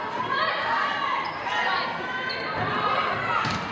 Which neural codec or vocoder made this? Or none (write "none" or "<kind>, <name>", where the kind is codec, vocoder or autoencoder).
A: none